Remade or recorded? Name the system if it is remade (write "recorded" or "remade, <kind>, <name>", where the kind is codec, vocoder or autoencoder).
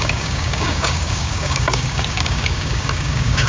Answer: remade, codec, DAC